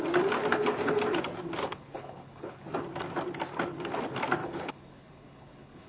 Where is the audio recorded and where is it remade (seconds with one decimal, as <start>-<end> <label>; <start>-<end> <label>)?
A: 0.0-1.6 recorded; 1.6-2.6 remade; 2.6-4.4 recorded; 4.4-5.9 remade